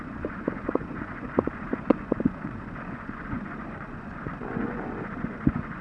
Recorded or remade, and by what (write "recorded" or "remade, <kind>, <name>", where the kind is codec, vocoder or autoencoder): remade, vocoder, Vocos